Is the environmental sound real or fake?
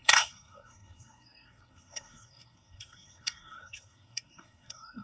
fake